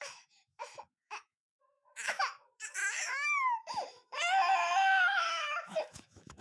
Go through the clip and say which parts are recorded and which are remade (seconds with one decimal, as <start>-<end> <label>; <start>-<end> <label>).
0.0-6.4 remade